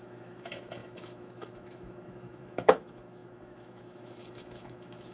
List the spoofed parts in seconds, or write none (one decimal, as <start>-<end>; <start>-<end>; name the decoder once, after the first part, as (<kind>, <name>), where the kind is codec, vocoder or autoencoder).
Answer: 0.0-5.1 (autoencoder, DAC-VAE)